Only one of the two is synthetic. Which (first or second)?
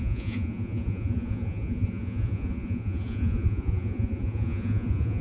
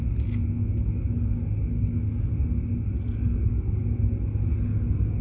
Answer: first